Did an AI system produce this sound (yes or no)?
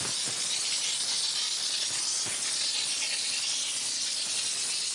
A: no